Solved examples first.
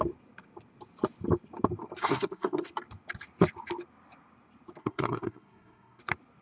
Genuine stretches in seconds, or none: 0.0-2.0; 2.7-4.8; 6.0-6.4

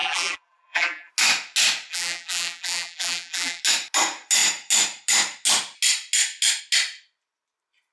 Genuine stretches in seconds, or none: 1.1-1.9; 3.6-7.9

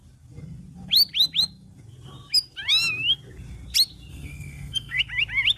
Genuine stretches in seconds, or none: 0.0-4.1; 5.0-5.6

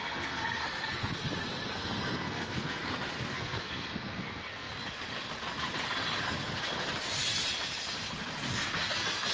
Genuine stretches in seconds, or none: 1.3-1.8; 2.8-3.3; 4.7-8.5

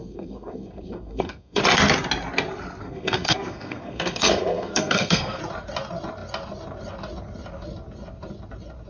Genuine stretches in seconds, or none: 1.6-2.8; 5.4-8.9

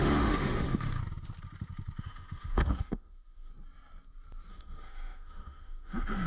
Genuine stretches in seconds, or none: 1.0-2.0; 3.5-4.5